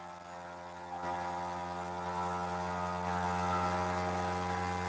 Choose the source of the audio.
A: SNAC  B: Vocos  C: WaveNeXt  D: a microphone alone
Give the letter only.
D